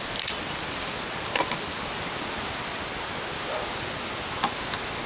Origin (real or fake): real